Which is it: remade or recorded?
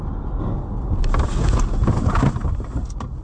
recorded